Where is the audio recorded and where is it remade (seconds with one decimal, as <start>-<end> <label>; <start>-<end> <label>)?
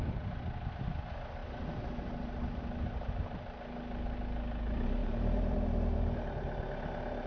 0.0-5.0 recorded; 5.0-7.3 remade